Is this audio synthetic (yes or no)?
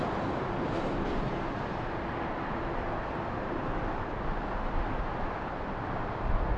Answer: no